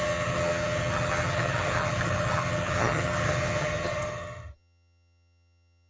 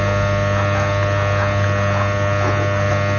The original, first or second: second